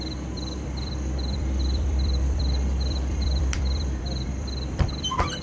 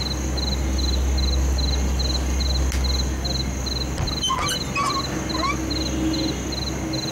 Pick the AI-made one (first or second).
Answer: first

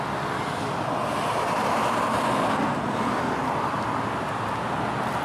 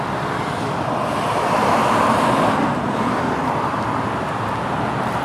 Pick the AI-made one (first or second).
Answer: second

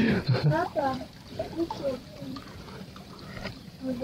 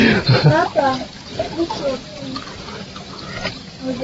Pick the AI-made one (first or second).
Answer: first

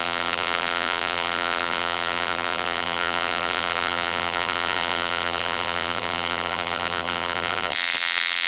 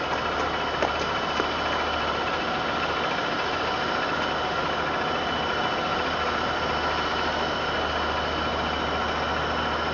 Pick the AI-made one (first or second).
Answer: first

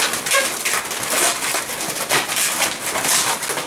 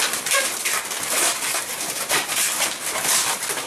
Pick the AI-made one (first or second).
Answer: second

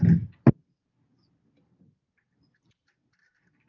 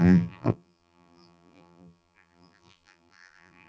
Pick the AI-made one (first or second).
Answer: second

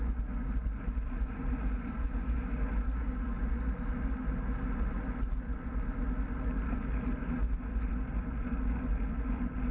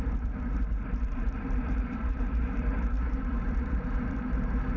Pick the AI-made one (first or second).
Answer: second